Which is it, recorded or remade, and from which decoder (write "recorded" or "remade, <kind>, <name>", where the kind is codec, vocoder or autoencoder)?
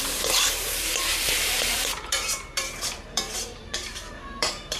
remade, vocoder, BigVGAN v2